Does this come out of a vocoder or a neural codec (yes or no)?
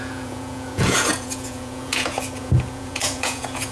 yes